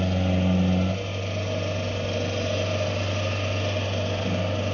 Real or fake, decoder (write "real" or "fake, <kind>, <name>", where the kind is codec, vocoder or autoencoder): real